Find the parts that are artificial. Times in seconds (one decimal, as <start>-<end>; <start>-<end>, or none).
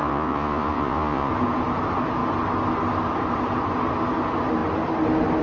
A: 0.0-1.3